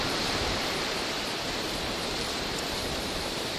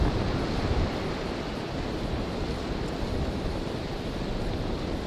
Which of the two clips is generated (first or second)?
first